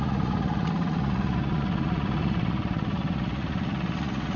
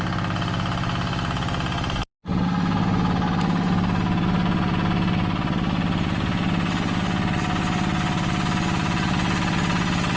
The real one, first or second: second